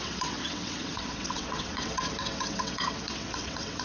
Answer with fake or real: fake